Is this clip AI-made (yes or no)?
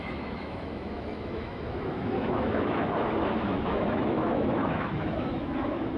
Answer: yes